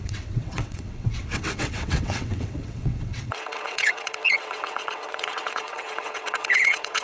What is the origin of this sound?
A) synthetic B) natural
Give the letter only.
A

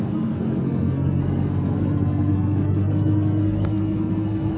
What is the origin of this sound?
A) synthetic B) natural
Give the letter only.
A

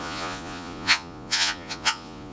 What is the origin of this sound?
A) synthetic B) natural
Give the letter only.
A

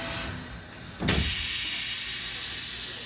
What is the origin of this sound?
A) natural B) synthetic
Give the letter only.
A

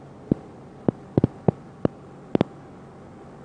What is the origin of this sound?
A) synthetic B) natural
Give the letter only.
B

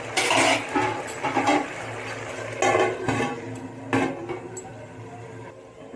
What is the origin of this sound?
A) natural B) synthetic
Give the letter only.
A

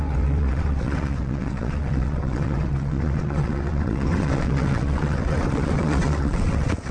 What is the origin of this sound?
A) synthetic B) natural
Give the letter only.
A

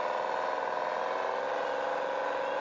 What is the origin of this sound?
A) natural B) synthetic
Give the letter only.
A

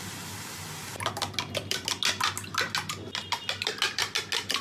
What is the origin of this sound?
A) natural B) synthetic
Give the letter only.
A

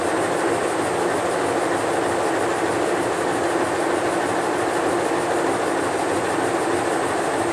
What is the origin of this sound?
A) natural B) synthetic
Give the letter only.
A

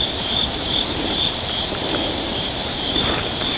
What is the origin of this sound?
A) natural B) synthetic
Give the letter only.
B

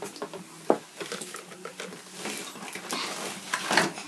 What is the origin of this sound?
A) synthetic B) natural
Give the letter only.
B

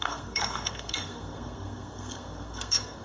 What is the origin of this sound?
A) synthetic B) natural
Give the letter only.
A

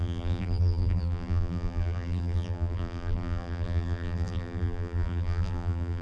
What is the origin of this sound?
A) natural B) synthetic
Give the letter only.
B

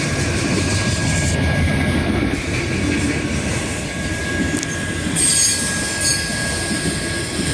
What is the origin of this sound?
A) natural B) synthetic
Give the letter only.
A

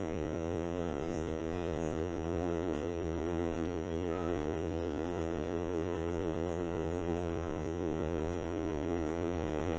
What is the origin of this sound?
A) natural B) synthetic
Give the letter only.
B